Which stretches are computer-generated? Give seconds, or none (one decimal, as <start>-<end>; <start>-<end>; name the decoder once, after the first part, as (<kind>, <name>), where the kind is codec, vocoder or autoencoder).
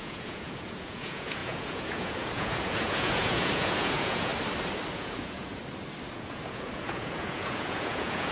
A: 0.0-4.3 (vocoder, Vocos); 4.9-5.6; 6.1-8.3